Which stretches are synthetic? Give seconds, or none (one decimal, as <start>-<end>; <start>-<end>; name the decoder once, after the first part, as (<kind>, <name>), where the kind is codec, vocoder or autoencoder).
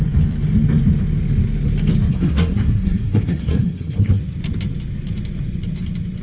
2.1-4.2 (codec, SNAC)